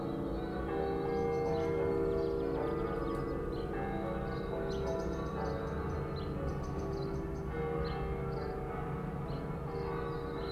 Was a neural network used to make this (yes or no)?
no